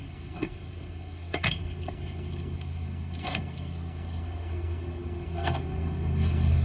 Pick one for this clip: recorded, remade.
remade